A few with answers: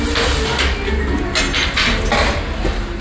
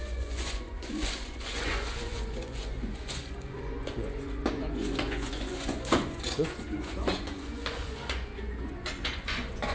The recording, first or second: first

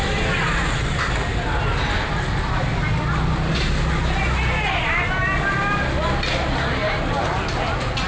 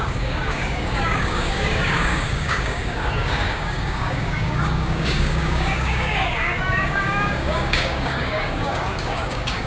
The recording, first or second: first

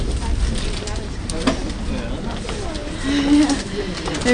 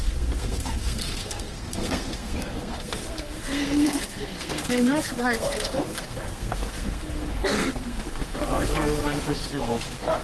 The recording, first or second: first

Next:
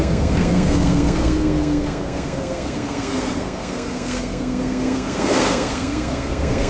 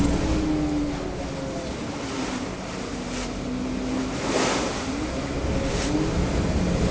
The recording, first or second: second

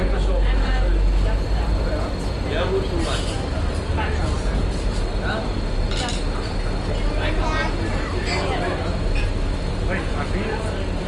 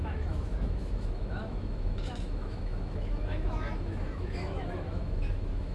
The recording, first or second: first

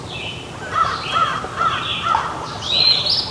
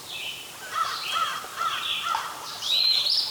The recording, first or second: first